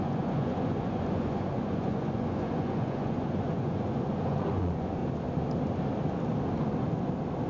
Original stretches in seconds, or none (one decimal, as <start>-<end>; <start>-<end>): 5.0-7.5